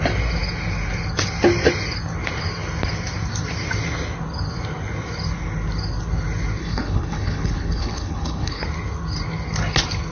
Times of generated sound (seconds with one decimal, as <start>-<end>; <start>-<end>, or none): 6.6-8.6